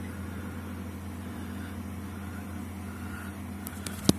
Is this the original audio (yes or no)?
yes